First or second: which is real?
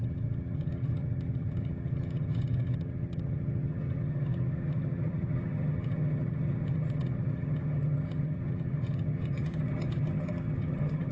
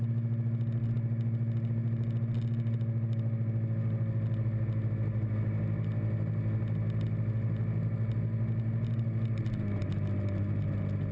second